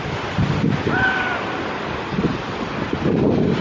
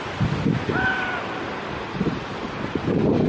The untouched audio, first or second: second